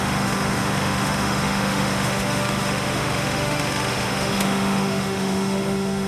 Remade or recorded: remade